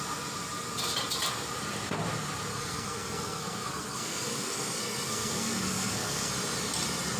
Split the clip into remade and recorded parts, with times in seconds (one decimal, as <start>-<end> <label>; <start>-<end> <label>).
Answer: 0.0-2.5 recorded; 2.5-6.3 remade; 6.3-7.2 recorded